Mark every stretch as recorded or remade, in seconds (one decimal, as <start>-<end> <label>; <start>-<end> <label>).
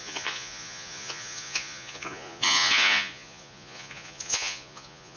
0.0-5.2 remade